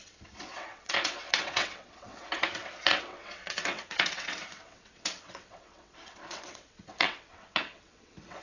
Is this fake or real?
fake